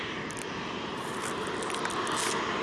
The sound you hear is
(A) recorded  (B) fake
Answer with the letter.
A